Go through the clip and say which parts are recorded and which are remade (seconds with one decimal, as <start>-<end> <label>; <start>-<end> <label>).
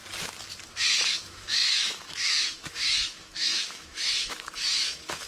0.0-0.6 recorded; 0.6-5.3 remade